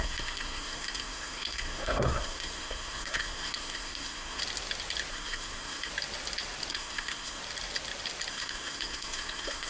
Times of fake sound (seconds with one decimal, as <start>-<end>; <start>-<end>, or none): 0.0-4.4; 5.1-5.9; 6.7-7.4; 8.3-9.7